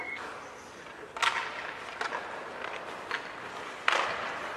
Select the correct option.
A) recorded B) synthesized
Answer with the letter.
A